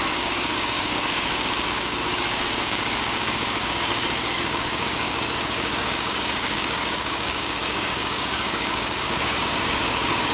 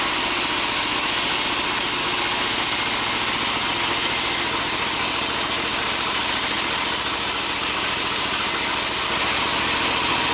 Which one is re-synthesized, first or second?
first